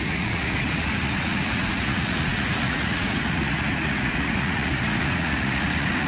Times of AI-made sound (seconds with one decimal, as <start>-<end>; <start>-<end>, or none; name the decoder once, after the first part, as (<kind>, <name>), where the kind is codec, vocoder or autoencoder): 0.0-6.1 (vocoder, Vocos)